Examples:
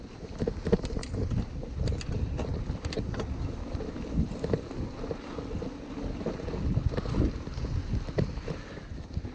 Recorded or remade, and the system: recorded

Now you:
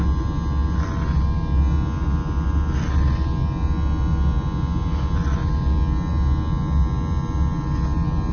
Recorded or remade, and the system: recorded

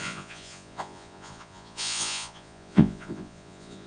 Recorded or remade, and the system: remade, vocoder, Vocos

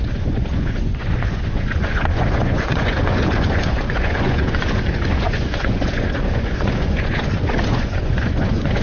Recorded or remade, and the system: remade, vocoder, Vocos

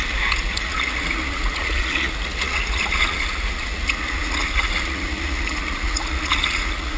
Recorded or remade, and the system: remade, vocoder, Vocos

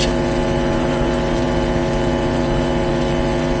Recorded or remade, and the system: remade, vocoder, Vocos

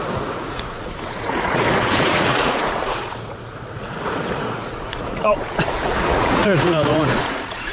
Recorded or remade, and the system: remade, vocoder, Vocos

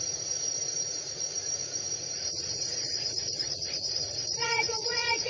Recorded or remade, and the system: remade, vocoder, Vocos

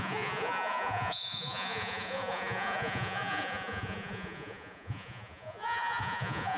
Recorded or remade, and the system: remade, vocoder, Vocos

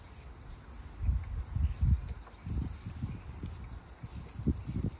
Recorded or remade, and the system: recorded